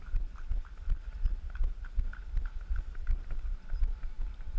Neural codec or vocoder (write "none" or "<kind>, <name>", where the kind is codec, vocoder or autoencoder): none